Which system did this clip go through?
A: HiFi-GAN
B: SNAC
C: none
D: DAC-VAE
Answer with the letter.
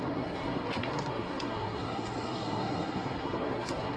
B